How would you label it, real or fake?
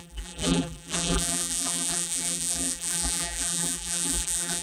fake